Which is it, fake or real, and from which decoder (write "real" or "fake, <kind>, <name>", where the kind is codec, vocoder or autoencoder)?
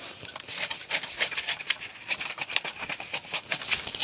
real